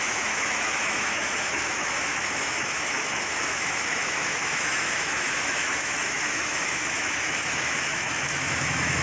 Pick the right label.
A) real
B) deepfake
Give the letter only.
B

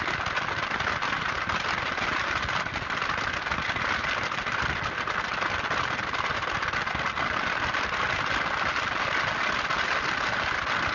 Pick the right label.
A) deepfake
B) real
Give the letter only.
B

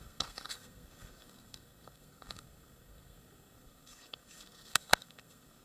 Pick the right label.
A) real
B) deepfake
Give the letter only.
B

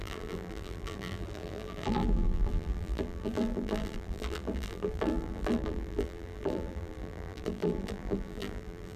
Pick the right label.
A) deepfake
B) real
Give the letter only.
A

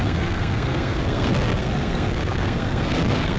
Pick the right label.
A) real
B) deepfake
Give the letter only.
B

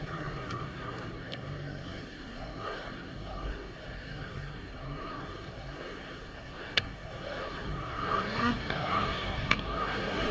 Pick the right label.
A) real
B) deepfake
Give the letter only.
B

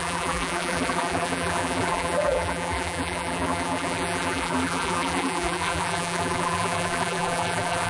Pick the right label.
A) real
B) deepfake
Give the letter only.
B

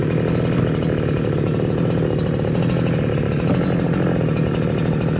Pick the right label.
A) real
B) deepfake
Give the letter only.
A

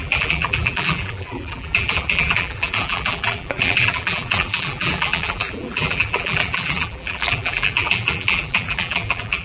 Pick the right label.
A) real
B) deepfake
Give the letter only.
B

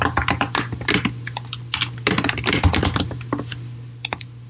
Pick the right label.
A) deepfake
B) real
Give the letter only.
B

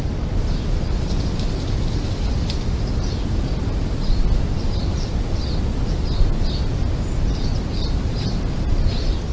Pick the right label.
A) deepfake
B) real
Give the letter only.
B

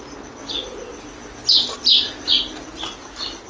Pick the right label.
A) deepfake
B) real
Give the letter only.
B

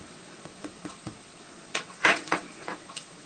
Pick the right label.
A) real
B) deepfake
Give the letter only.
B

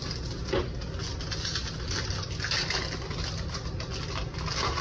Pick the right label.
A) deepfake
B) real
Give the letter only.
B